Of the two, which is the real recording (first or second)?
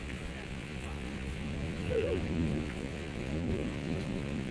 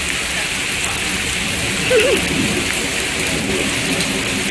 second